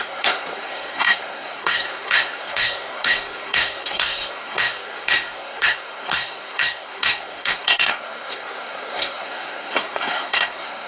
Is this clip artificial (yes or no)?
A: yes